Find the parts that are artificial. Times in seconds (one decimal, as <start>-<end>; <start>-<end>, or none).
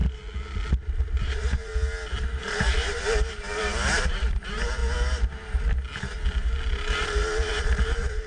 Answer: 0.7-1.7; 2.4-4.8; 6.7-8.3